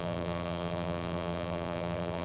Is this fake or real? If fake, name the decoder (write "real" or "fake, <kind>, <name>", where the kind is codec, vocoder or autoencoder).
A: fake, vocoder, BigVGAN v2